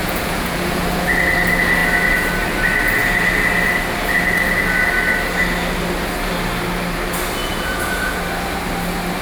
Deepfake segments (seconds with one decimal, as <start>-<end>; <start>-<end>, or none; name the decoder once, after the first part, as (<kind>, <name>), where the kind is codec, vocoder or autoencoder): 0.0-1.1 (vocoder, Vocos); 7.4-8.2